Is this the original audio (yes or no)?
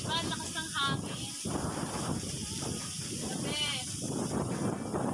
yes